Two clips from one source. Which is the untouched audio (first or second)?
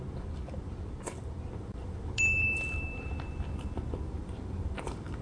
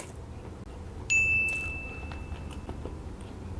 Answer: second